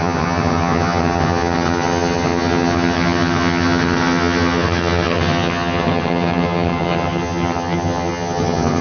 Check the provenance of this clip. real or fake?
fake